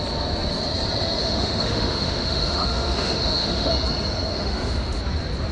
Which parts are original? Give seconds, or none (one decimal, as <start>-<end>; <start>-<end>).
0.0-1.2; 3.7-4.3; 5.0-5.5